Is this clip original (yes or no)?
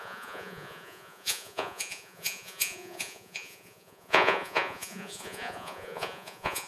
no